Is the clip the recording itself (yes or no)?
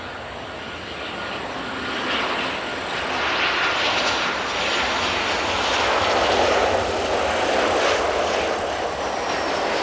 yes